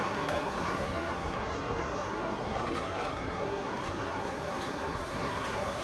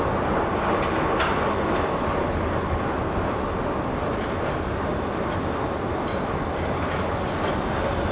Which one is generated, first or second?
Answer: first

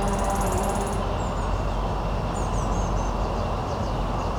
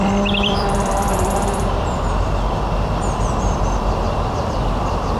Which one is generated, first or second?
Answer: second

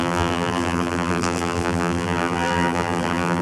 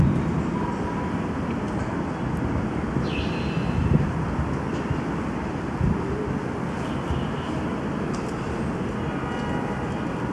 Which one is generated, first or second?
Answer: first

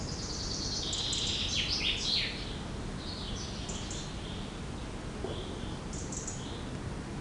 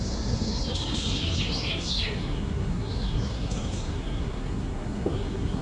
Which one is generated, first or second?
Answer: second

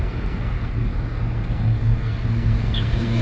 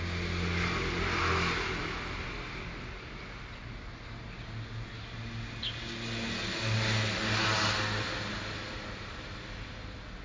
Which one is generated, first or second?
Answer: first